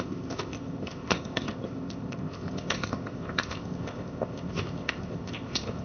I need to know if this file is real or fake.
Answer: fake